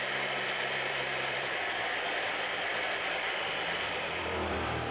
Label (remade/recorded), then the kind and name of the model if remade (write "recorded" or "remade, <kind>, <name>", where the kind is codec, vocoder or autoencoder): remade, vocoder, BigVGAN v2